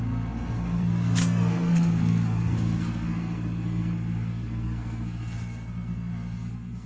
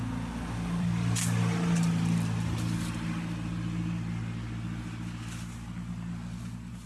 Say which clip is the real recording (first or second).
second